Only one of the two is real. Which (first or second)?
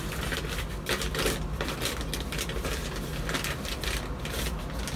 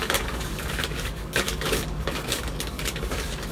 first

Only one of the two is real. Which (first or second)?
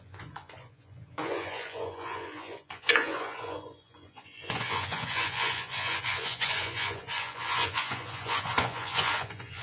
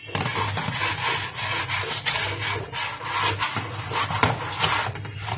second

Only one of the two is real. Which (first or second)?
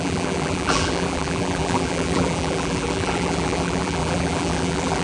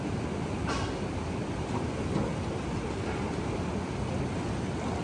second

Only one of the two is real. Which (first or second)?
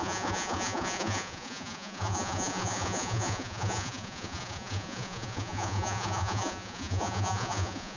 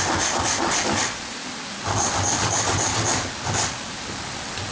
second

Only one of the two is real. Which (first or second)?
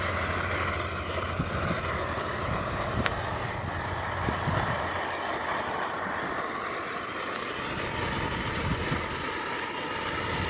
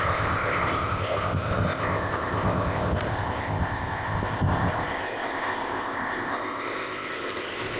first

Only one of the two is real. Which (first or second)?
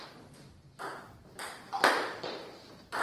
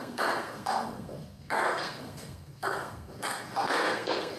first